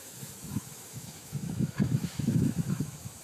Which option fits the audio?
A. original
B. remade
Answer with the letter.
B